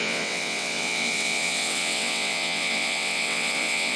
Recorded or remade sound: remade